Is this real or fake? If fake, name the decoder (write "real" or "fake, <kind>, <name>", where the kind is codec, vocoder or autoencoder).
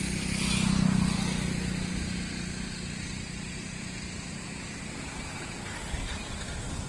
real